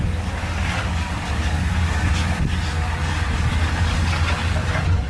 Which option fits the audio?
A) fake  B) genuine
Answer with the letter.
A